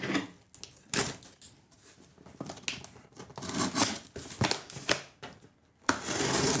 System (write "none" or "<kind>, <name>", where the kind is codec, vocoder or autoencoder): none